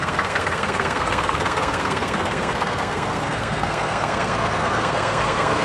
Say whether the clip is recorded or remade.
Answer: remade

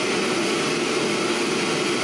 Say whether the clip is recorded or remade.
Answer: recorded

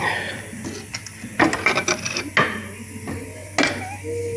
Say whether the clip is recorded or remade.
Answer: recorded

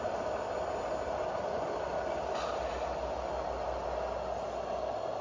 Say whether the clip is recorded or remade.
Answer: recorded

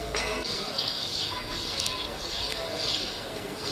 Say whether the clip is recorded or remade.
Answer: remade